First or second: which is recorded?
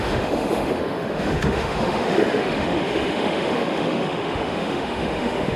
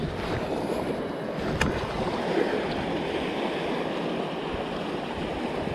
second